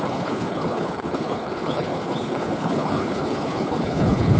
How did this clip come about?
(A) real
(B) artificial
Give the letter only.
B